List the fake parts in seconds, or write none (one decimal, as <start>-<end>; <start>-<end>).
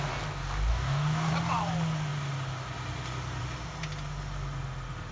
0.7-1.3